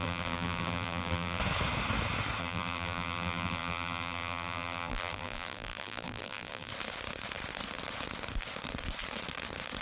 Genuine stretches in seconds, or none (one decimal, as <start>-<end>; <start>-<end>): 1.4-2.4; 6.7-9.8